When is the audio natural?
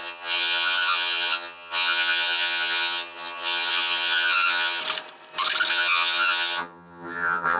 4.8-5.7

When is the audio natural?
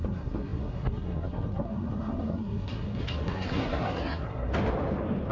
4.5-5.3